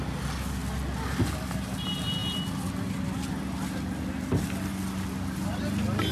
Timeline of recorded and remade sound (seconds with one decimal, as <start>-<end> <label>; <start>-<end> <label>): 0.0-6.1 recorded